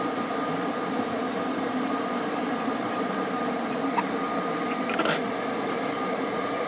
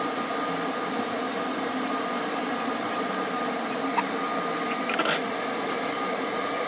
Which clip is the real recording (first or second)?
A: second